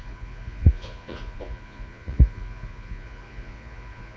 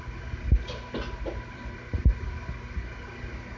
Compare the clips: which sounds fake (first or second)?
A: first